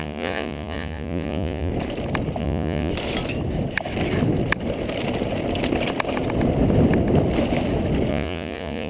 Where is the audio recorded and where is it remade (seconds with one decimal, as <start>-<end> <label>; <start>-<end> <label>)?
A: 0.0-1.7 remade; 1.7-2.4 recorded; 2.4-2.9 remade; 2.9-8.1 recorded; 8.1-8.9 remade